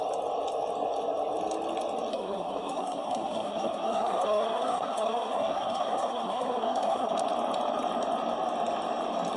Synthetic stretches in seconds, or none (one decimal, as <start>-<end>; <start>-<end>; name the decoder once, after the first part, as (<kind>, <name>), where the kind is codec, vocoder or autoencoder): 2.1-7.1 (codec, SNAC)